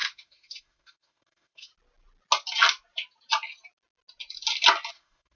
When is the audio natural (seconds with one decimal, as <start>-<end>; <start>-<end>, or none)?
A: 1.7-4.9